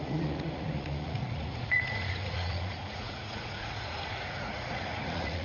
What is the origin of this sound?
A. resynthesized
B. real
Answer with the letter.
A